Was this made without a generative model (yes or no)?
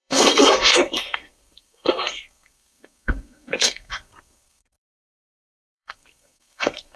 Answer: no